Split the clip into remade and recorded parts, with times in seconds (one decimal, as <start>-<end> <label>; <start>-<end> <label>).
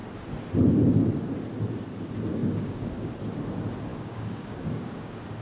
0.0-2.3 recorded; 2.3-3.1 remade; 3.1-3.9 recorded; 3.9-5.4 remade